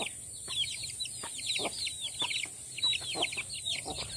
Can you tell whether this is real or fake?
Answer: real